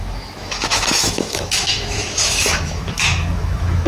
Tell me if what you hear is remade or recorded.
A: remade